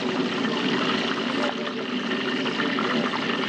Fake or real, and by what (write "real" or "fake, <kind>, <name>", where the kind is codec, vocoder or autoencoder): real